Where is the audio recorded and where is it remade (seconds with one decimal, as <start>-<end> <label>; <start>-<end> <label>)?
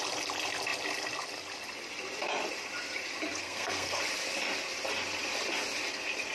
0.0-3.4 recorded; 3.4-4.0 remade; 4.0-6.3 recorded